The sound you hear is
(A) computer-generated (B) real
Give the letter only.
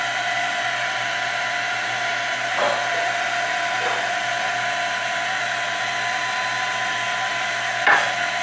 B